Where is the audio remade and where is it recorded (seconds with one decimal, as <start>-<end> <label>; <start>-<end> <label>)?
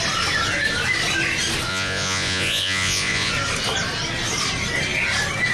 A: 0.0-1.7 recorded; 1.7-3.3 remade; 3.3-5.5 recorded